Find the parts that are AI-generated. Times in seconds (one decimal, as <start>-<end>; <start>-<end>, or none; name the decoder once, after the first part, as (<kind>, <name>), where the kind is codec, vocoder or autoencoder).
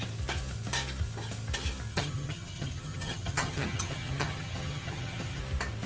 1.9-5.4 (vocoder, HiFi-GAN)